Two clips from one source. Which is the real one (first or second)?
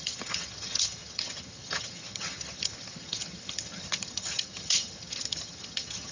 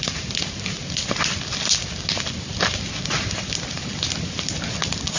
second